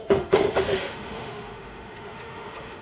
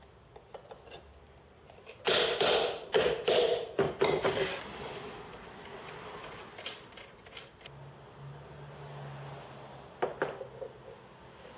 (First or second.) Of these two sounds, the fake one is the first